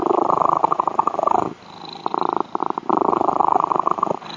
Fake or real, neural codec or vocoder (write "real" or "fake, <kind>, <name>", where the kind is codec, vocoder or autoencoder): fake, vocoder, BigVGAN v2